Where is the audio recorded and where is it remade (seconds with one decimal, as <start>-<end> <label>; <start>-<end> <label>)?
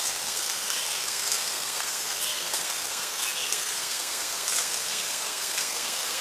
0.0-6.2 remade